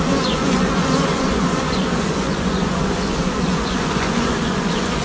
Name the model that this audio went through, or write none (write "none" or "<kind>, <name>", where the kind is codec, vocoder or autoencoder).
vocoder, Vocos